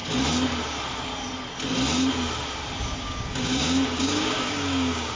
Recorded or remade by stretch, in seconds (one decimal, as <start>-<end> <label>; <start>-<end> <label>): 0.0-3.0 recorded; 3.0-5.2 remade